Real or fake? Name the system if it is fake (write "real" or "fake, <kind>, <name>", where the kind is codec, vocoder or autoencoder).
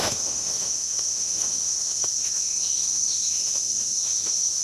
fake, autoencoder, DAC-VAE